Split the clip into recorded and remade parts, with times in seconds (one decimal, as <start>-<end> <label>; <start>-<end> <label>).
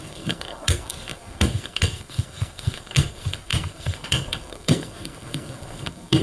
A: 0.0-6.2 remade